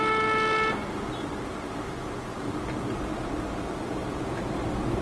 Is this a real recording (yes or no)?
yes